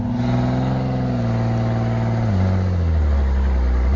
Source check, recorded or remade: recorded